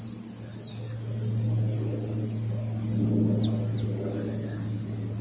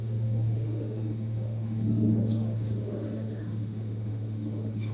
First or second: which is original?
first